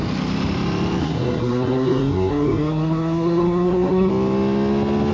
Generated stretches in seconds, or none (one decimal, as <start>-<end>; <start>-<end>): 1.0-4.1